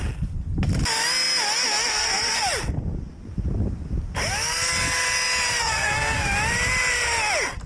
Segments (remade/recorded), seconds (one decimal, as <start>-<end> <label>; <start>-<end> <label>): 0.0-1.9 recorded; 1.9-2.4 remade; 2.4-5.6 recorded; 5.6-6.3 remade; 6.3-7.7 recorded